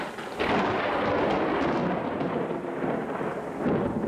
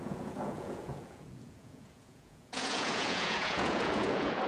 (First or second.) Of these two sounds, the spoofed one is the second